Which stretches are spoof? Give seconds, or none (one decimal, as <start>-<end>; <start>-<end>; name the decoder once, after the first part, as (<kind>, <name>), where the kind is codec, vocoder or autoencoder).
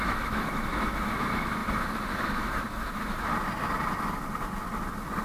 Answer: 0.0-3.3 (autoencoder, DAC-VAE)